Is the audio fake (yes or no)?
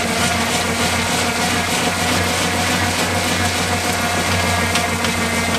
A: no